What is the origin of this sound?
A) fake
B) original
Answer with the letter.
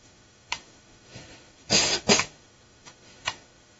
A